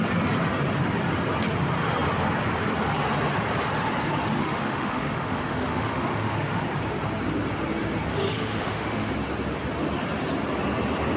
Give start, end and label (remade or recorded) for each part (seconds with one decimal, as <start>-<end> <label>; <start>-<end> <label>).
0.0-4.4 recorded; 4.4-6.6 remade; 6.6-8.1 recorded; 8.1-9.1 remade; 9.1-11.2 recorded